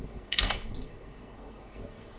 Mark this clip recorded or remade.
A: remade